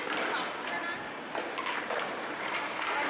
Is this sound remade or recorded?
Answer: recorded